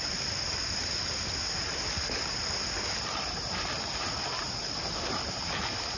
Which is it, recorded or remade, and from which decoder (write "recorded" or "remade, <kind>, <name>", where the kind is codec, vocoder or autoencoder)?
recorded